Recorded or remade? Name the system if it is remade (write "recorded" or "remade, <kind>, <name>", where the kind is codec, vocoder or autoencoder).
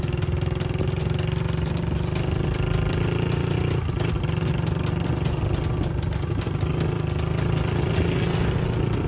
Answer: recorded